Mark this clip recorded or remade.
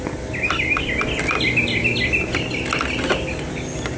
recorded